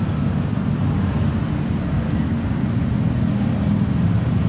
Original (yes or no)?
yes